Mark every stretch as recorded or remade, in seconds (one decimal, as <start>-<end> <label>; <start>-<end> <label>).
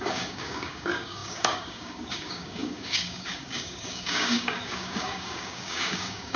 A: 0.0-6.4 remade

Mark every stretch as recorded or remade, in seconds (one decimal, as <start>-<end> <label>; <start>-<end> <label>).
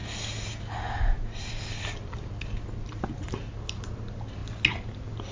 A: 0.0-5.3 recorded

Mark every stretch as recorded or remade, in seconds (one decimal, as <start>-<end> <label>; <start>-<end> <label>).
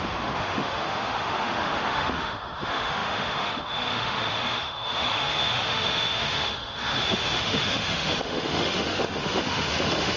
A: 0.0-10.2 remade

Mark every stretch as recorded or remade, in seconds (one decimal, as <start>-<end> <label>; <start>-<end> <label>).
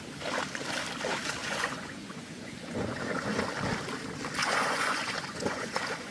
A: 0.0-1.4 recorded; 1.4-3.4 remade; 3.4-4.4 recorded; 4.4-6.1 remade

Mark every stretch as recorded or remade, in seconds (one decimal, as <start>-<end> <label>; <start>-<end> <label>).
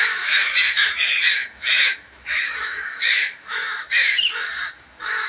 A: 0.0-5.3 remade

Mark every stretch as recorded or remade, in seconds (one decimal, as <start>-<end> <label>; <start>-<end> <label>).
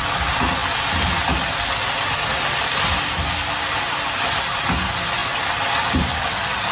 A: 0.0-6.7 recorded